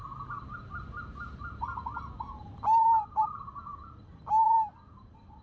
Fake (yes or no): no